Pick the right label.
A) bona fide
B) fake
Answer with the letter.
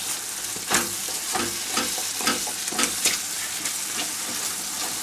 A